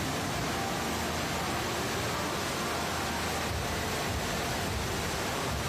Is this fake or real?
real